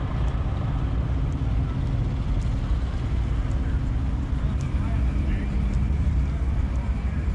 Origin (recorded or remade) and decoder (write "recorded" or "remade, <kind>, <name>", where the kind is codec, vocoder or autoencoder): recorded